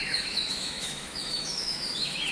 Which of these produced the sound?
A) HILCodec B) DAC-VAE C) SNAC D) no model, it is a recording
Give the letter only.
B